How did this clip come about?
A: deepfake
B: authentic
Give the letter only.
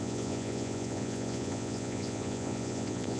A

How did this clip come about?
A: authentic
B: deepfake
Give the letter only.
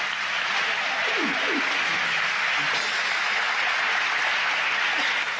A